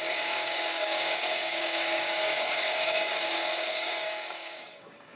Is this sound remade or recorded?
remade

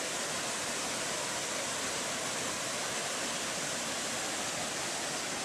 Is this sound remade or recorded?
recorded